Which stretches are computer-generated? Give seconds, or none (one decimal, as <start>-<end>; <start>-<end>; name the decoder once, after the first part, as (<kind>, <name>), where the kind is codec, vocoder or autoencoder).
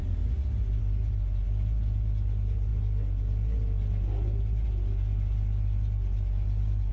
none